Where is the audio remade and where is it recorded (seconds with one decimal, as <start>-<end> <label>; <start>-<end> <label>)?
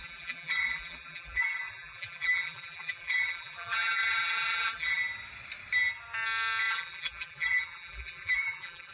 0.0-5.0 remade; 5.0-6.7 recorded; 6.7-8.9 remade